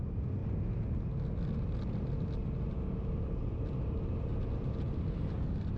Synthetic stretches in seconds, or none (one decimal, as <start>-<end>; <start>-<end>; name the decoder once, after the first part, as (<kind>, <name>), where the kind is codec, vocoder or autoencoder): 4.3-5.8 (vocoder, BigVGAN v2)